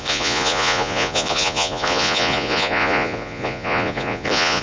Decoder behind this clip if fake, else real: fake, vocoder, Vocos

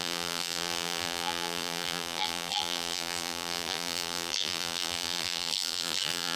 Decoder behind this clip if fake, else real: fake, vocoder, BigVGAN v2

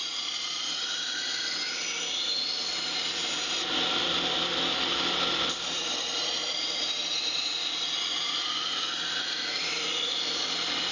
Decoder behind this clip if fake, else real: real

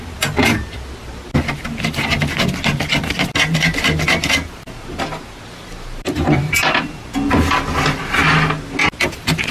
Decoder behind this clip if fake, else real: real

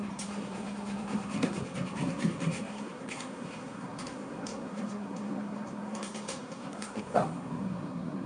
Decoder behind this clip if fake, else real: fake, codec, SNAC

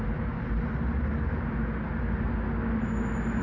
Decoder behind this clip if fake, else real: real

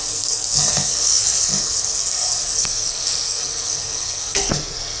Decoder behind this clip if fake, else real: fake, codec, SNAC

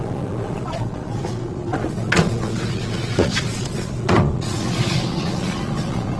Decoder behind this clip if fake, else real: fake, vocoder, Vocos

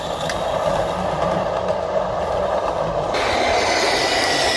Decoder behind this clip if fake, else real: real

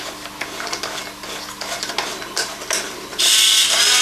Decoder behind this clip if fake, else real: real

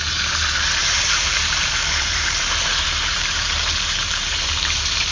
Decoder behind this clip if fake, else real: fake, vocoder, BigVGAN v2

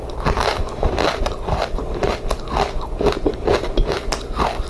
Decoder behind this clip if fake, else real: real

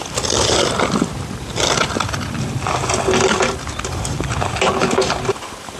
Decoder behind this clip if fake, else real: real